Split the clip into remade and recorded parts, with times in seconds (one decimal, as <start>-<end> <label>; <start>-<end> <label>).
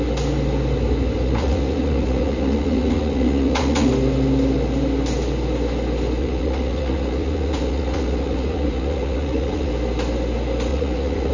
0.0-1.2 recorded; 1.2-3.9 remade; 3.9-6.2 recorded; 6.2-9.7 remade; 9.7-10.7 recorded; 10.7-11.3 remade